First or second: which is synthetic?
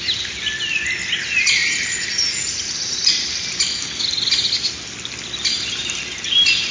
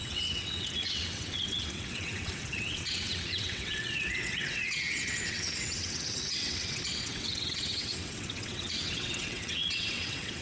second